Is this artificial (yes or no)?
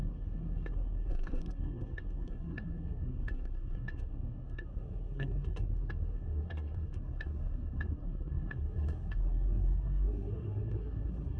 yes